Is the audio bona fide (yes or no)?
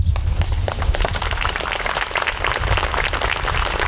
yes